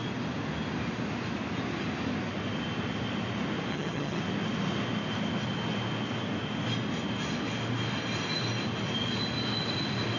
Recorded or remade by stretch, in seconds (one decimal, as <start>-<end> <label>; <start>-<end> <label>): 0.0-3.7 recorded; 3.7-4.2 remade; 4.2-10.2 recorded